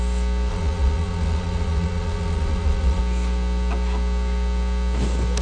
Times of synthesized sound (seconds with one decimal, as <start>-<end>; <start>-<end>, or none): 0.5-3.0